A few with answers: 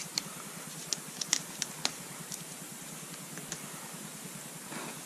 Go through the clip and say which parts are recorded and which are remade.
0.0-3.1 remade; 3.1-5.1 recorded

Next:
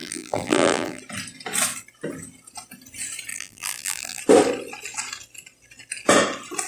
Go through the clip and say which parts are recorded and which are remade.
0.0-1.0 remade; 1.0-3.3 recorded; 3.3-4.2 remade; 4.2-6.7 recorded

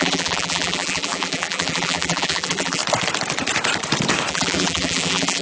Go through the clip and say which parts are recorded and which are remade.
0.0-2.8 remade; 2.8-4.3 recorded; 4.3-5.4 remade

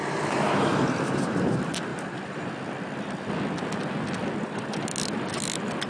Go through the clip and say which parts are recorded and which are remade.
0.0-1.9 recorded; 1.9-2.5 remade; 2.5-5.9 recorded